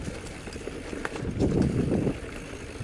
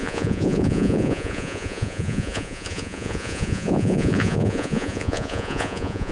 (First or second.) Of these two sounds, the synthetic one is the second